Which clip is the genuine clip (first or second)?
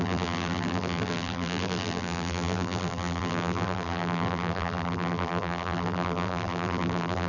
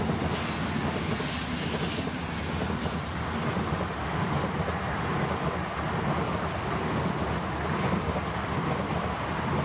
second